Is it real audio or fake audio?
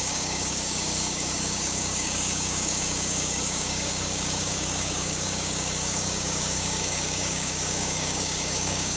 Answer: fake